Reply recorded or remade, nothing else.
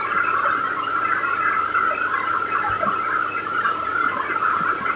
recorded